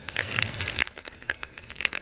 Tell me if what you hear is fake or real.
fake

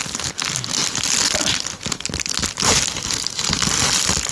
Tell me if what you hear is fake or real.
real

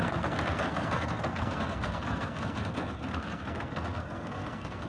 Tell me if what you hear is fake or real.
fake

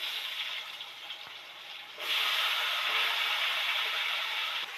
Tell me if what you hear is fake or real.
fake